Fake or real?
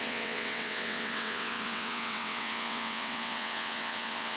fake